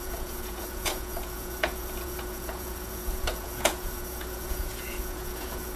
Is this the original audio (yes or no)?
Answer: no